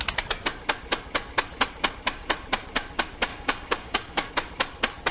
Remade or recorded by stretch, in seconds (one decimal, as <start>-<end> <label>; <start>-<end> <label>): 0.0-3.3 recorded; 3.3-4.3 remade; 4.3-5.1 recorded